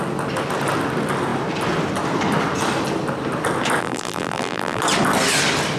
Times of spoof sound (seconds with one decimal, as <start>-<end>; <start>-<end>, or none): 3.8-4.8